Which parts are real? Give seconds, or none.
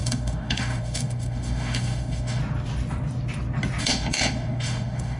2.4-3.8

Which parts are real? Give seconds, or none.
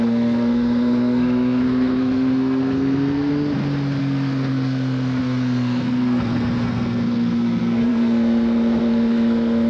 3.3-4.0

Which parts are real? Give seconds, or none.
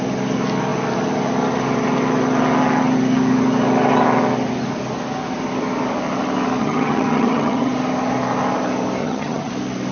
0.0-6.6; 7.7-9.0; 9.5-9.9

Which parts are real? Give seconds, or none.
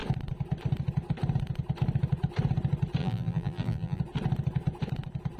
0.0-3.0; 4.0-5.4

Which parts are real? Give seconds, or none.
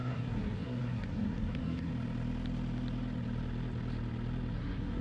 1.9-4.5